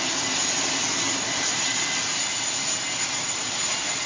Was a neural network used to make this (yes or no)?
no